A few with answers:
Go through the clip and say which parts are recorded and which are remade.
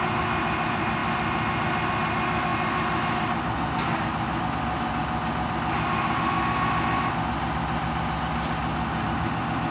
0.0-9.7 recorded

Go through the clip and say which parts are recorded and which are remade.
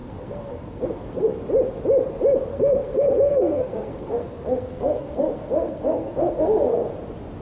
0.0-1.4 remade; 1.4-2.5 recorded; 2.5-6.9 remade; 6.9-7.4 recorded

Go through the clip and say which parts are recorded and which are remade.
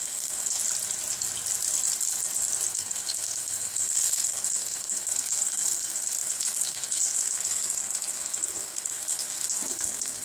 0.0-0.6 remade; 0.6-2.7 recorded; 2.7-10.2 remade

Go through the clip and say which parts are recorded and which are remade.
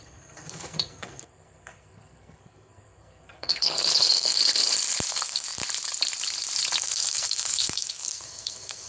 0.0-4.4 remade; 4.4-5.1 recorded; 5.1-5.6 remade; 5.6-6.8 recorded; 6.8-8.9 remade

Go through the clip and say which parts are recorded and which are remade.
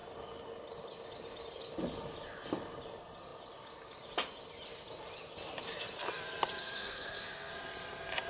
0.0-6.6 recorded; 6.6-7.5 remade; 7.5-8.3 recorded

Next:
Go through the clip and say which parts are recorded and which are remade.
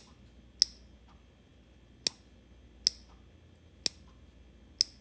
0.0-5.0 recorded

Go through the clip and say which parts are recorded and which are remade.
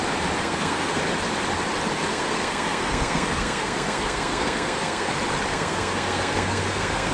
0.0-0.4 recorded; 0.4-1.0 remade; 1.0-2.1 recorded; 2.1-5.1 remade; 5.1-5.5 recorded; 5.5-7.1 remade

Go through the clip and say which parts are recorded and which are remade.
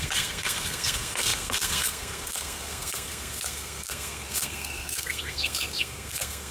0.0-6.5 remade